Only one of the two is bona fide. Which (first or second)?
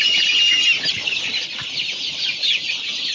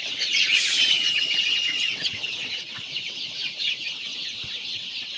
first